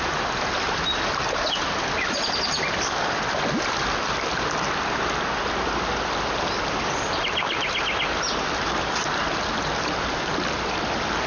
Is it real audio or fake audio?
real